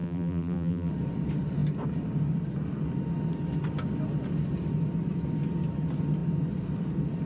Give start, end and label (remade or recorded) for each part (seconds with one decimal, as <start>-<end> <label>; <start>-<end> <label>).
0.0-0.9 remade; 0.9-7.3 recorded